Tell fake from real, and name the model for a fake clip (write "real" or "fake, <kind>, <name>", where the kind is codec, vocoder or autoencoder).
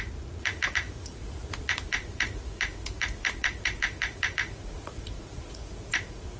fake, vocoder, Vocos